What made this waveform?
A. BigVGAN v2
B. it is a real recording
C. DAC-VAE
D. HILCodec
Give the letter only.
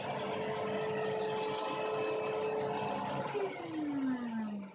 B